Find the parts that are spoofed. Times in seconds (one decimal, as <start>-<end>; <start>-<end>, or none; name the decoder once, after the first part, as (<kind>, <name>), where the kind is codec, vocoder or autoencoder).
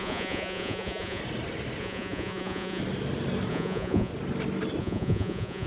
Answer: 0.0-1.2 (vocoder, Vocos); 1.8-2.8; 3.5-4.1; 4.8-5.7